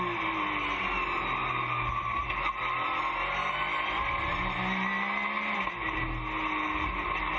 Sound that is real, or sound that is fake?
real